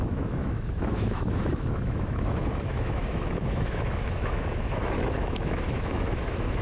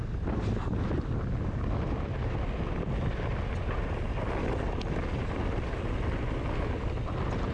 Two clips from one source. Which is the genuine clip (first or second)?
second